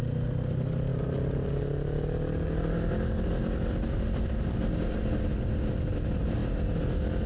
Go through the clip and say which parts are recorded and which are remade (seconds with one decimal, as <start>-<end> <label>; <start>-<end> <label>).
0.0-7.3 recorded